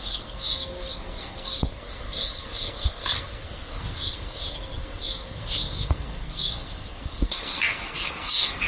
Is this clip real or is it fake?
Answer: fake